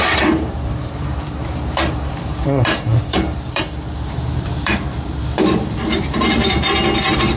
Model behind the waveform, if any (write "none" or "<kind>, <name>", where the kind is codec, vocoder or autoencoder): vocoder, BigVGAN v2